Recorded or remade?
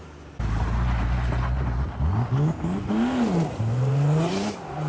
recorded